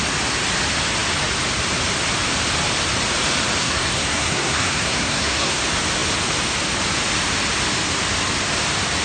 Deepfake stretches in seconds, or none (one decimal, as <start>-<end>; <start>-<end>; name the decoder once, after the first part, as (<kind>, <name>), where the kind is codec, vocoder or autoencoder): 3.6-5.6 (codec, SNAC)